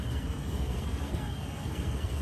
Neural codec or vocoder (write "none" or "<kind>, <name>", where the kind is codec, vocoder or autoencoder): codec, SNAC